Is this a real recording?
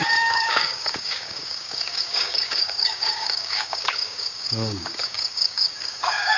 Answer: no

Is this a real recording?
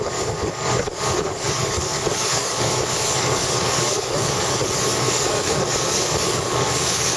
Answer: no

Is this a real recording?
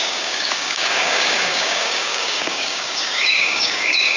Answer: no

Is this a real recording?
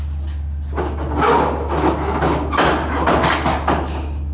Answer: yes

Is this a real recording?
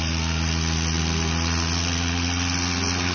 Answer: yes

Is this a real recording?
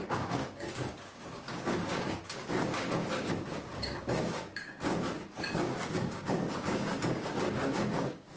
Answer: no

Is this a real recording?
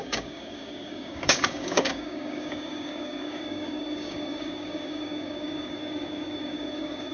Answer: no